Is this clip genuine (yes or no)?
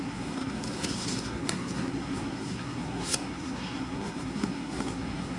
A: no